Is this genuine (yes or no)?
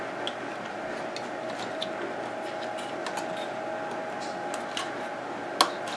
yes